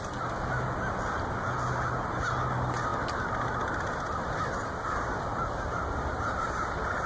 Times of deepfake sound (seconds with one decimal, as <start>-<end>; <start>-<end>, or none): none